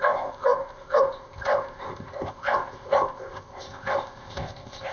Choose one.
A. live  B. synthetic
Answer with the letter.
B